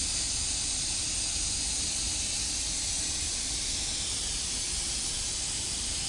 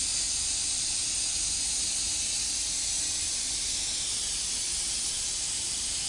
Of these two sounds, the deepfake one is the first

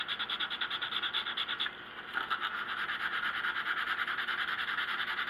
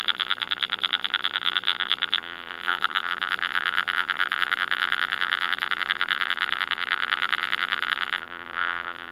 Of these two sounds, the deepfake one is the second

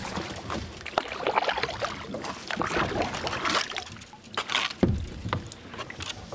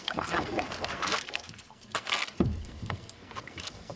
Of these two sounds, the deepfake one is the second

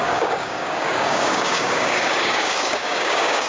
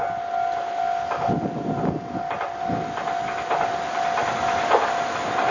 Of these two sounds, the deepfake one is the first